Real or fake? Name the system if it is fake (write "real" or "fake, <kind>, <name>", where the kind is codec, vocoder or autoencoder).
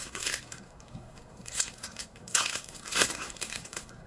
fake, codec, SNAC